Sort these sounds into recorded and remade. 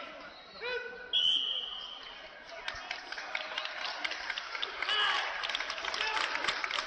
recorded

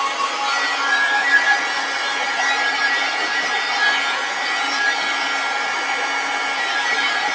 recorded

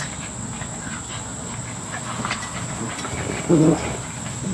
recorded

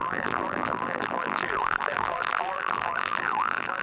remade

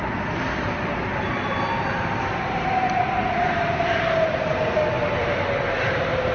recorded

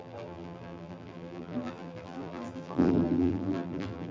remade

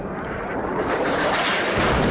remade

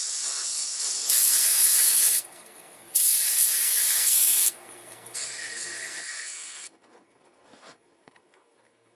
remade